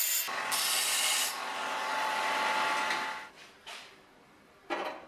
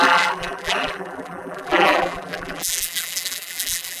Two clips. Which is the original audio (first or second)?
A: first